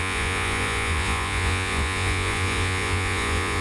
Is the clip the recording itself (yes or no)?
no